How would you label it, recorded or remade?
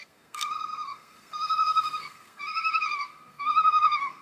remade